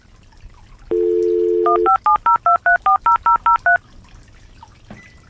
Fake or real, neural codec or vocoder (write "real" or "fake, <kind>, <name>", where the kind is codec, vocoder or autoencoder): real